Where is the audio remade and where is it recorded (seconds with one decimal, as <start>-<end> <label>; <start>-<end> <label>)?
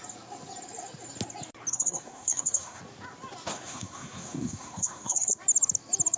0.0-1.7 recorded; 1.7-2.8 remade; 2.8-3.5 recorded; 3.5-5.3 remade; 5.3-6.2 recorded